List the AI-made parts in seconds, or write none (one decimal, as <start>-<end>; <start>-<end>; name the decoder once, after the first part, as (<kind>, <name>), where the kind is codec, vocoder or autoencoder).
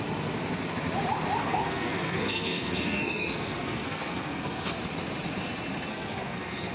1.4-4.7 (codec, SNAC); 5.9-6.7